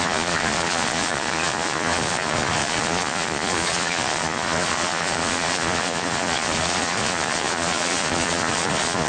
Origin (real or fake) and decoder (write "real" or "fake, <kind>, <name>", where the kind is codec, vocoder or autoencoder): fake, vocoder, Vocos